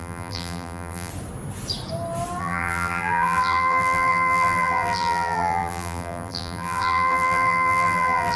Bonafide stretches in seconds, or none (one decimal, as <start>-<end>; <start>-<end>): 1.1-2.4